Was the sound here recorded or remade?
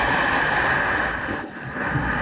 recorded